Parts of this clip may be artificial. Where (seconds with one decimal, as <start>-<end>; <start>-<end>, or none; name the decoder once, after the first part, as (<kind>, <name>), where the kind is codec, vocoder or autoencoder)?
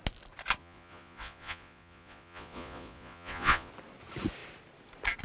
0.6-3.7 (vocoder, Vocos)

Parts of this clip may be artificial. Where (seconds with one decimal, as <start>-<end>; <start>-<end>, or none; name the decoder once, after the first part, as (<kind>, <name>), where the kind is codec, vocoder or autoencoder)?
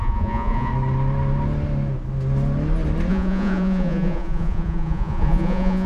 0.0-0.7 (vocoder, Vocos); 3.1-5.9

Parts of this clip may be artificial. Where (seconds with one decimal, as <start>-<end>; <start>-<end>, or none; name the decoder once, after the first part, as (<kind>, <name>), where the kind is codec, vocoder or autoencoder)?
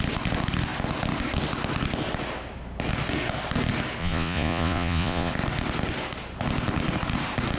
4.0-5.3 (vocoder, Vocos)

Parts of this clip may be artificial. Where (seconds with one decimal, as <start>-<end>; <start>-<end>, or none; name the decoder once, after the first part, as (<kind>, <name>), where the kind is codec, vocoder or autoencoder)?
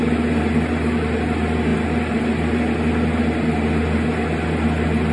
none